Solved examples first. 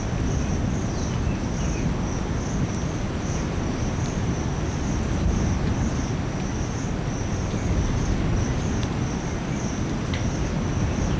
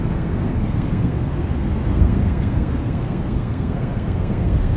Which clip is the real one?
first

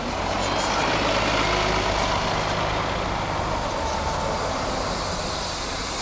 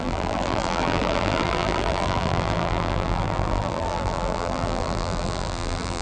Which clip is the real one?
first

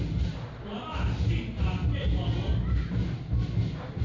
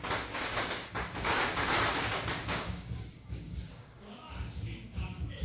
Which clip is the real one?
first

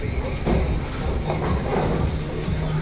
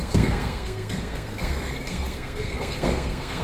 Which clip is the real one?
first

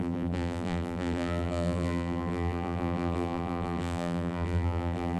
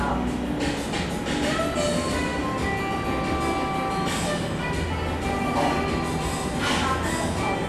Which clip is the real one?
second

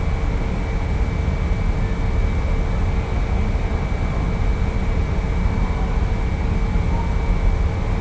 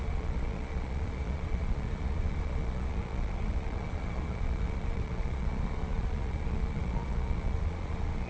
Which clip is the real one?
first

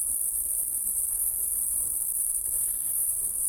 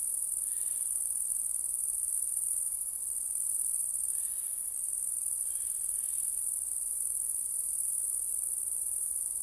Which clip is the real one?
second